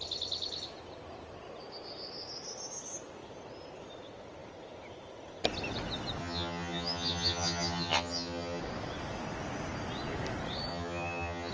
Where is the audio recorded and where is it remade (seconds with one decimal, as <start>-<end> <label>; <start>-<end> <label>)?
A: 0.0-6.2 recorded; 6.2-8.6 remade; 8.6-10.7 recorded; 10.7-11.5 remade